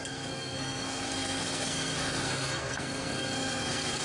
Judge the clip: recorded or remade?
remade